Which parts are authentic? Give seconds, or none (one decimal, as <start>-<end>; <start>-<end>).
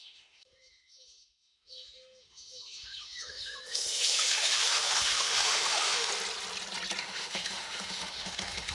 6.1-7.0